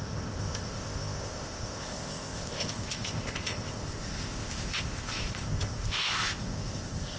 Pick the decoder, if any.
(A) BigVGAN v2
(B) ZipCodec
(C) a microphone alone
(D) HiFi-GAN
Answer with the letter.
B